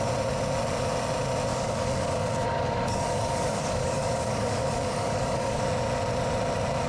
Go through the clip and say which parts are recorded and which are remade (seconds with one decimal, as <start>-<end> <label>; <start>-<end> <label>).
0.0-1.5 recorded; 1.5-5.6 remade; 5.6-6.9 recorded